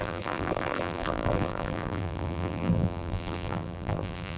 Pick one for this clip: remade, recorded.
remade